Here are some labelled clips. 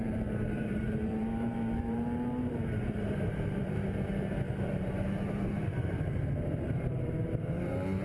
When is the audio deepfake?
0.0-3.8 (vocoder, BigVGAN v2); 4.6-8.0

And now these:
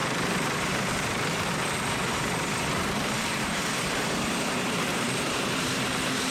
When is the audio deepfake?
0.0-6.3 (vocoder, BigVGAN v2)

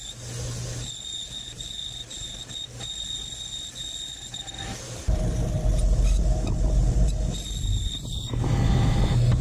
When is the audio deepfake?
none

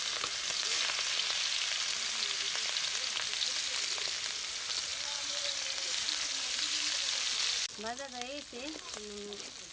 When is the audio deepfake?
4.9-5.6 (vocoder, BigVGAN v2)

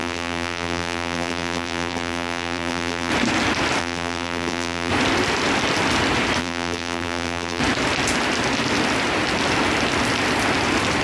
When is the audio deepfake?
0.0-3.1 (vocoder, BigVGAN v2); 3.8-4.9; 6.4-7.6